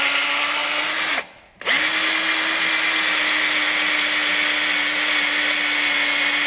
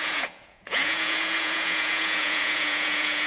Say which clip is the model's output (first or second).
second